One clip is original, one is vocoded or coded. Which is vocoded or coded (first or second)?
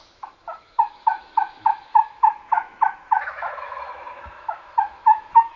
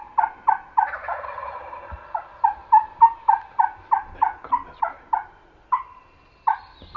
first